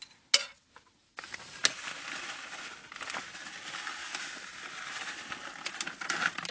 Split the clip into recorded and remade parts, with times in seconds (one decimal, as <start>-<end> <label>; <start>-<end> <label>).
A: 0.0-1.0 recorded; 1.0-1.6 remade; 1.6-6.5 recorded